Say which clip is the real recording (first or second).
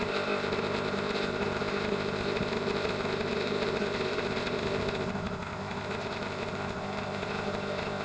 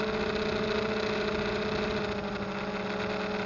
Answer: second